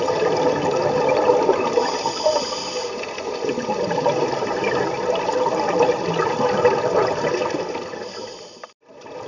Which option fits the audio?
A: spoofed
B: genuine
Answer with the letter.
B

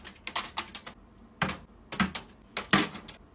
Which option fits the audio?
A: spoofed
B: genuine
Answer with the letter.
B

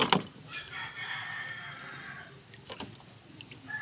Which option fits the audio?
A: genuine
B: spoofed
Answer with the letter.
A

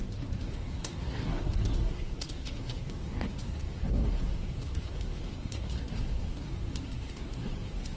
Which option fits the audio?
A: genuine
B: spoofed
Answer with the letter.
B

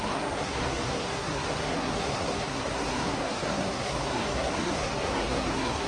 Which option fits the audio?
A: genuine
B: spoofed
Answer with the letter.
B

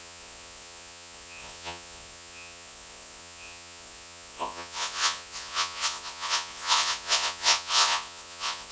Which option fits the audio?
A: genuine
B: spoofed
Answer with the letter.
B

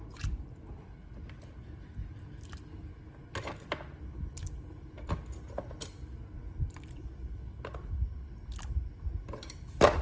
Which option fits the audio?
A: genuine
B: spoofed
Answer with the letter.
A